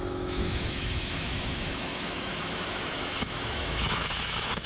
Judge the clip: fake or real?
fake